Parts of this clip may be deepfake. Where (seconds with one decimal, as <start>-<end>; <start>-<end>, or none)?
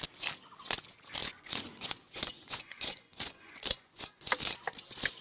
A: 1.2-4.3